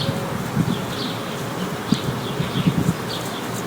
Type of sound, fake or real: real